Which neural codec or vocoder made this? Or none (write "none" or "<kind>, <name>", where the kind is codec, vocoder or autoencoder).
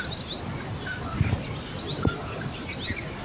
none